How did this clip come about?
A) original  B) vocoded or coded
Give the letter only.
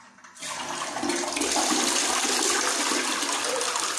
B